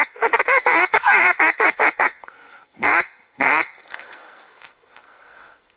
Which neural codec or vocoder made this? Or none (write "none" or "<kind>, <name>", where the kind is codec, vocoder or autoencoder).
codec, SNAC